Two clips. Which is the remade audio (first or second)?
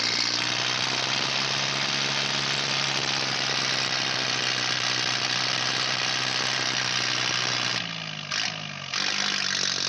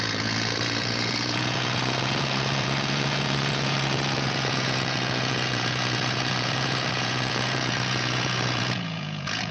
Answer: second